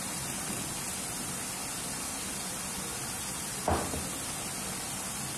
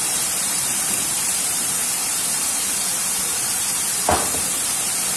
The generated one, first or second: second